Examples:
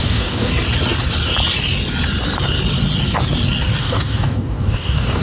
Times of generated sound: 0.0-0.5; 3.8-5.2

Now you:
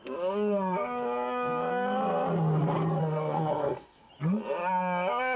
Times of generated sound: 3.0-4.1

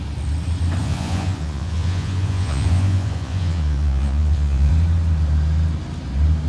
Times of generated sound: 0.8-4.7

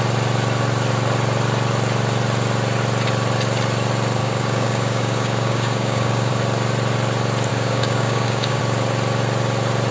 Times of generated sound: 4.2-6.3; 7.5-8.6